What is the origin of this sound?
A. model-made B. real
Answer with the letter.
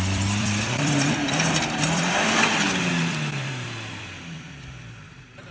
A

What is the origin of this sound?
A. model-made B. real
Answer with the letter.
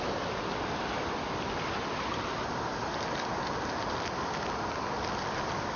B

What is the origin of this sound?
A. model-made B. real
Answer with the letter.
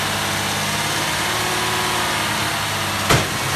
B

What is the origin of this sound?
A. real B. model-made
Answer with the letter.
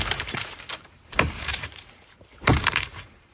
B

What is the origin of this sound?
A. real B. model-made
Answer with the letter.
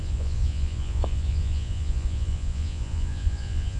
B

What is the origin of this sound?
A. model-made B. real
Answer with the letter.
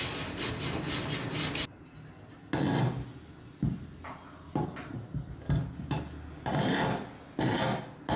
B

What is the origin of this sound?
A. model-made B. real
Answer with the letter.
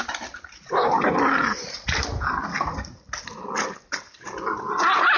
B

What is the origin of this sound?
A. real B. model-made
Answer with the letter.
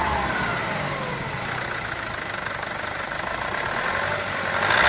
A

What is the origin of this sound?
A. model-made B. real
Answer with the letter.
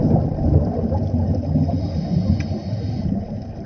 B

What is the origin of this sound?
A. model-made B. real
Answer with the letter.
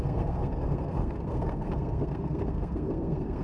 A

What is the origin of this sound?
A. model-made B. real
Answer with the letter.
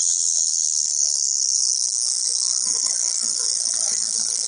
A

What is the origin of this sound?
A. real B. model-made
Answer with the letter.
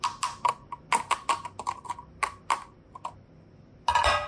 A